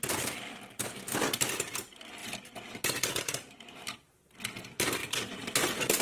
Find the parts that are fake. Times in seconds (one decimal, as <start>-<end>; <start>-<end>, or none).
none

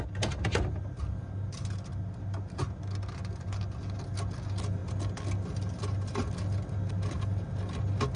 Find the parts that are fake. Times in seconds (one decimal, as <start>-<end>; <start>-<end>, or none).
none

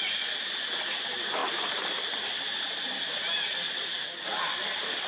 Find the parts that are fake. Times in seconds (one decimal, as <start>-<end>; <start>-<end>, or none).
none